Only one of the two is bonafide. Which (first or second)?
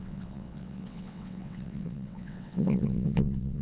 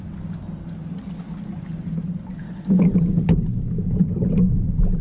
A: second